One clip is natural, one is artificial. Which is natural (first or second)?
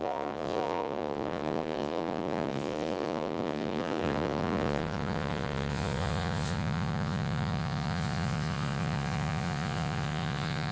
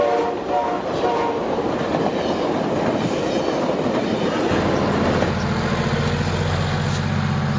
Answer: second